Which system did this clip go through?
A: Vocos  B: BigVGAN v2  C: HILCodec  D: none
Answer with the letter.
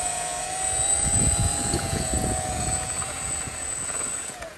A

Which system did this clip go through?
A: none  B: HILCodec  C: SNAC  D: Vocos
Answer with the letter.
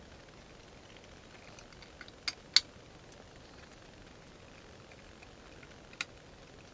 A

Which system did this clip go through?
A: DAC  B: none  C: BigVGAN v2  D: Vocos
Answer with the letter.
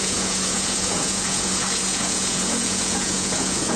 D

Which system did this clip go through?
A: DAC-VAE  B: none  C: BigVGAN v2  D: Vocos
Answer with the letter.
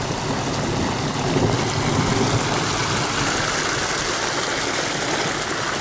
B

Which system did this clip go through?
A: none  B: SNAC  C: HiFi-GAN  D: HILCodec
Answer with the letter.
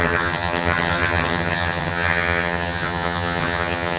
C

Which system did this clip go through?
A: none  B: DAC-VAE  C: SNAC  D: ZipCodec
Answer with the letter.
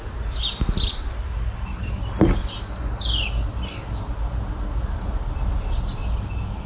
A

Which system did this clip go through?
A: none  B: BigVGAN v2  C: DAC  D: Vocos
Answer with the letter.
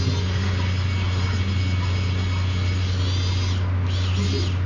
A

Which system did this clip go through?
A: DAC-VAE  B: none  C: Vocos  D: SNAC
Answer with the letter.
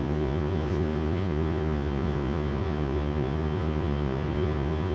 C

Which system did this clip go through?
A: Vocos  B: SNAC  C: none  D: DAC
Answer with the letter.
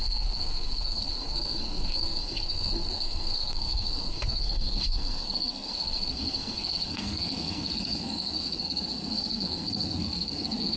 B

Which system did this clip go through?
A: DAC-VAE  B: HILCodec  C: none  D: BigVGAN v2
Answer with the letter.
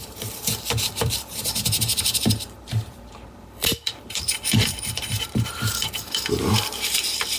D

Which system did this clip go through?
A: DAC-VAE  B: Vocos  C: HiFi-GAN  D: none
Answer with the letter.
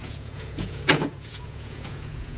B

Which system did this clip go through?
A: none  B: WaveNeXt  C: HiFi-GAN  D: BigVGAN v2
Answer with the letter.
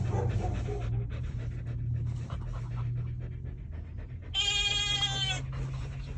A